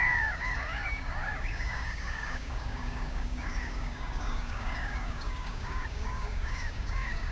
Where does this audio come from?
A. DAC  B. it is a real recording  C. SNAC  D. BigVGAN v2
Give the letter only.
A